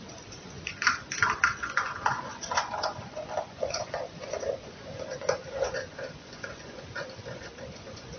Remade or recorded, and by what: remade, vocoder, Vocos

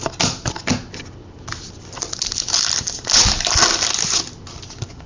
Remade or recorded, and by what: recorded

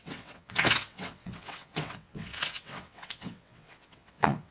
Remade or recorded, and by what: remade, vocoder, WaveNeXt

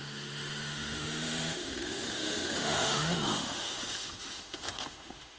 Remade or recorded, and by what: remade, autoencoder, DAC-VAE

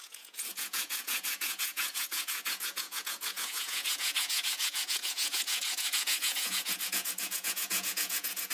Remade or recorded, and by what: remade, vocoder, Vocos